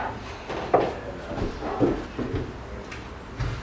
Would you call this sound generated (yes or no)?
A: no